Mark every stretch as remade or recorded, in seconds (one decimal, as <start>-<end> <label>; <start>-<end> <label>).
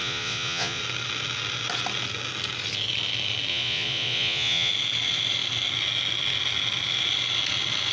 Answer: 0.0-0.8 remade; 0.8-3.5 recorded; 3.5-4.7 remade; 4.7-7.9 recorded